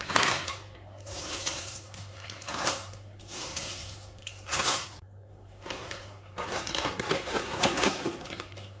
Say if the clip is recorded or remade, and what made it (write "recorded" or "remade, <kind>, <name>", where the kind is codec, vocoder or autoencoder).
remade, codec, SNAC